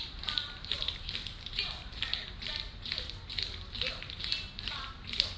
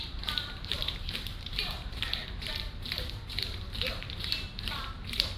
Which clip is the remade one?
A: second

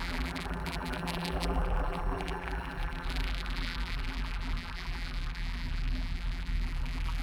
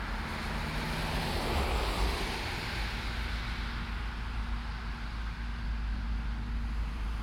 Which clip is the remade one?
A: first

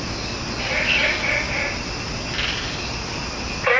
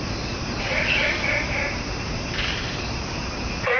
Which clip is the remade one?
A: second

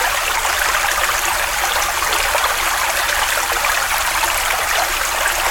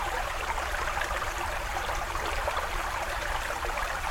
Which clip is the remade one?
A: second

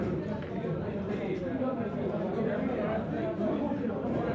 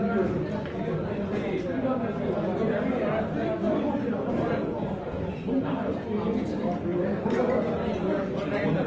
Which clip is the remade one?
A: first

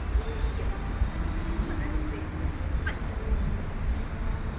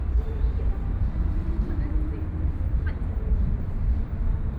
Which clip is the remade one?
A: second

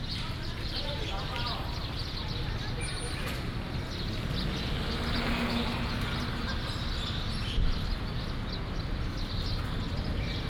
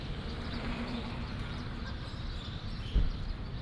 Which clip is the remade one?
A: second